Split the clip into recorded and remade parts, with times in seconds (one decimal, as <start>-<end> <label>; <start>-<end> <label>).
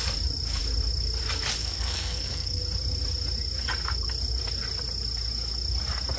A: 0.0-1.6 recorded; 1.6-2.6 remade; 2.6-6.2 recorded